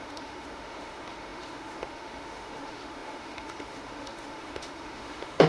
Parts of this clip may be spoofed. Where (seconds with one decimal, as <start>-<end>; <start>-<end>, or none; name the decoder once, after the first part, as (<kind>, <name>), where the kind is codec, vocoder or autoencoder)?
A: 0.0-5.5 (autoencoder, DAC-VAE)